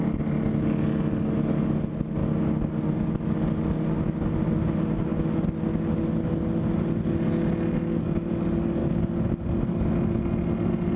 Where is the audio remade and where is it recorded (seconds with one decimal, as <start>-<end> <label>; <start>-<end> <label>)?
0.0-11.0 recorded